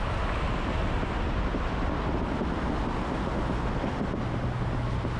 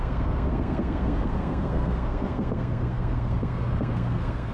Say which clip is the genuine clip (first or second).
first